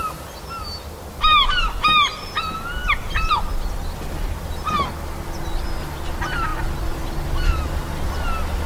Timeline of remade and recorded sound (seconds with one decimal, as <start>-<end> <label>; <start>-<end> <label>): 0.0-8.7 recorded